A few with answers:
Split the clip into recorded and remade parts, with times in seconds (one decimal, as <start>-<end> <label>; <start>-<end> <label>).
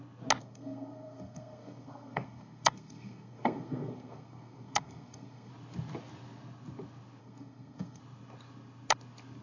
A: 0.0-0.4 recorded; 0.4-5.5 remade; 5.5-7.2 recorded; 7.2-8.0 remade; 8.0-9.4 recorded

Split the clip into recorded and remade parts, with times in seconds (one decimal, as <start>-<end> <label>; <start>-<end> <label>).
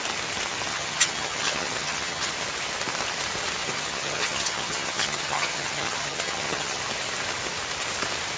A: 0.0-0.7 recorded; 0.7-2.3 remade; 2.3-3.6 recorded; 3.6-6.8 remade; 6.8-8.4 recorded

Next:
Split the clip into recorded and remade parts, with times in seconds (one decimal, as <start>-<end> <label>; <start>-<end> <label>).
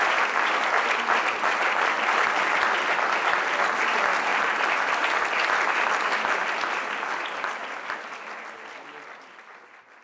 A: 0.0-4.3 recorded; 4.3-4.9 remade; 4.9-10.0 recorded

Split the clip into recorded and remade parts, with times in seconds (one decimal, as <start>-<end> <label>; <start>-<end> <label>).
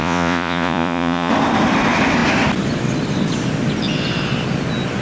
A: 0.0-1.3 remade; 1.3-5.0 recorded